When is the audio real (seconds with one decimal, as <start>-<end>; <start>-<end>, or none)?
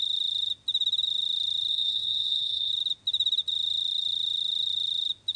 0.0-1.7; 2.7-5.4